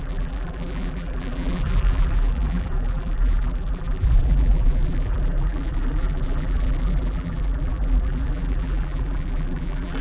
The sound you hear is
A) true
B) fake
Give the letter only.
B